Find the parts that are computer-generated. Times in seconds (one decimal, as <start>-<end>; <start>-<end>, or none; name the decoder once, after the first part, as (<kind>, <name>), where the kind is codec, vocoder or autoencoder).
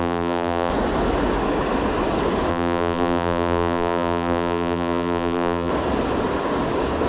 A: 0.0-0.7 (vocoder, BigVGAN v2); 2.5-5.7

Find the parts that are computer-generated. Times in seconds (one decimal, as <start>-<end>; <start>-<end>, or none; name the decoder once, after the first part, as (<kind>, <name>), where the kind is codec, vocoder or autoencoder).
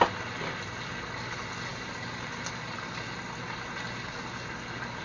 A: none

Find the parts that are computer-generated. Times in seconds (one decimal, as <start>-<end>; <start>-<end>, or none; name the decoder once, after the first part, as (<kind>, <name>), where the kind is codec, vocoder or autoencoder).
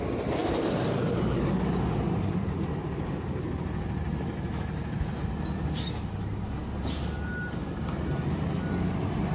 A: 0.4-4.6 (vocoder, BigVGAN v2)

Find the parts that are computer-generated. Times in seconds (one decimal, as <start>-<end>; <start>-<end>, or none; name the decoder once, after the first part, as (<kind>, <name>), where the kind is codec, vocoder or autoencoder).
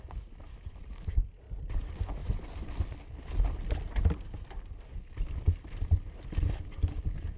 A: 0.8-1.8 (vocoder, BigVGAN v2)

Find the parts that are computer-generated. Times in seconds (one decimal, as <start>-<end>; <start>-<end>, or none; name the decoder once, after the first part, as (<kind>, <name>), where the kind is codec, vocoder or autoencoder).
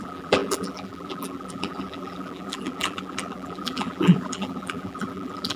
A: 0.0-5.6 (vocoder, BigVGAN v2)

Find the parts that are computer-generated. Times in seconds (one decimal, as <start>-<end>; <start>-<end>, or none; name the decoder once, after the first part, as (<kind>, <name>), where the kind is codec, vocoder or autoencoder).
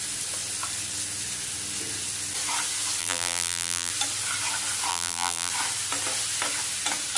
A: 3.0-3.9 (vocoder, BigVGAN v2); 4.9-5.5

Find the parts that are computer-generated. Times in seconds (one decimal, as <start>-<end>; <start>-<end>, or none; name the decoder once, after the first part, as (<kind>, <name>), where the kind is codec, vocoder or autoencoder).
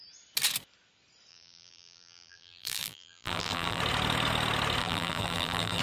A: 1.3-3.8 (vocoder, BigVGAN v2); 4.8-5.8